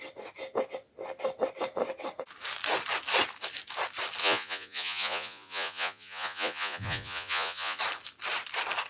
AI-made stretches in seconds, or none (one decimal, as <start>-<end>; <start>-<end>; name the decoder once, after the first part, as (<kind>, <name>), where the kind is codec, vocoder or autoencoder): 4.2-7.8 (vocoder, Vocos)